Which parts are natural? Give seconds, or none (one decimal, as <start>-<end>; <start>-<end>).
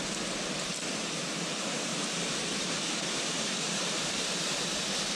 0.0-1.9